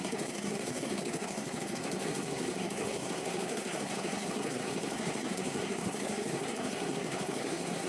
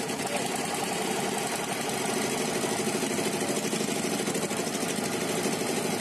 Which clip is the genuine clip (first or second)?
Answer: second